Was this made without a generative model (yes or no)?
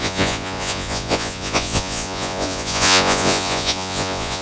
no